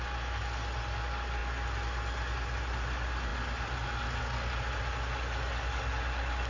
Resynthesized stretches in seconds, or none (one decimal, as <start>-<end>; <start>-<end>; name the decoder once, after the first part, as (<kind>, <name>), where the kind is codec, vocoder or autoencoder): none